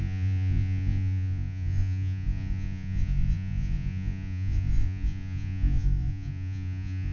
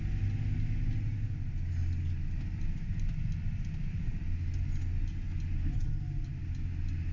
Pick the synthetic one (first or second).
first